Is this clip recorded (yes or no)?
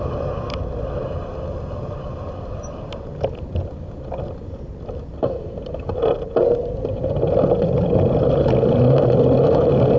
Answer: yes